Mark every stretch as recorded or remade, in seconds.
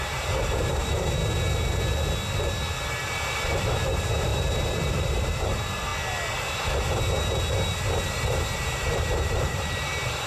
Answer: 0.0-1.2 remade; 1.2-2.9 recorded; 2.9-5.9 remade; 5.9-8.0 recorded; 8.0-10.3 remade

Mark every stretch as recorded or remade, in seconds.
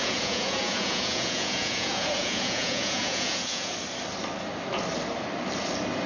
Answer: 0.0-3.7 remade; 3.7-6.1 recorded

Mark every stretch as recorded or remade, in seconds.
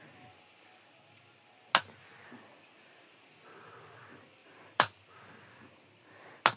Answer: 0.0-4.4 recorded; 4.4-5.3 remade; 5.3-6.6 recorded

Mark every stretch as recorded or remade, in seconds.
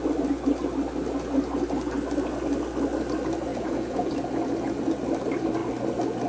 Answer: 0.0-3.5 recorded; 3.5-4.1 remade; 4.1-6.3 recorded